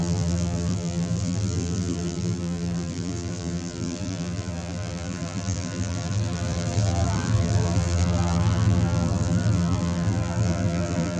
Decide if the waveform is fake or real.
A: fake